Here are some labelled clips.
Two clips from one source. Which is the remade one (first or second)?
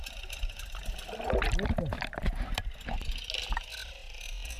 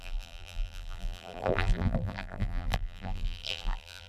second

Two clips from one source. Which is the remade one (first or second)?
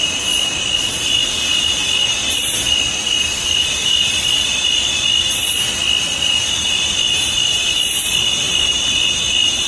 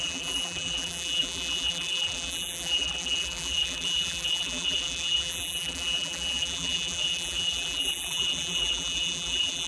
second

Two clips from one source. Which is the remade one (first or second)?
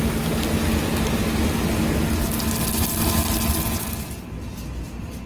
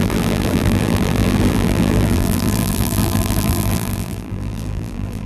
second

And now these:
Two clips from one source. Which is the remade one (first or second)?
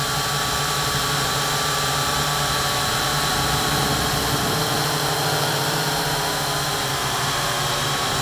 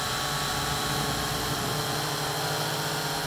first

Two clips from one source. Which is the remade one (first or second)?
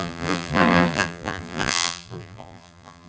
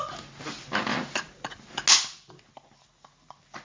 first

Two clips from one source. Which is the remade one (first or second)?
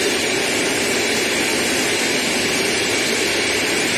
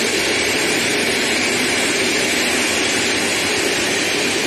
second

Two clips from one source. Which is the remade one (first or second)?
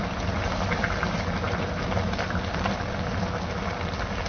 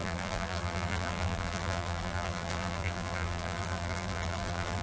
second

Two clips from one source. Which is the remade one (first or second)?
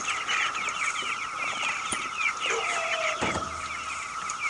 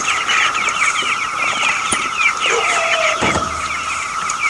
second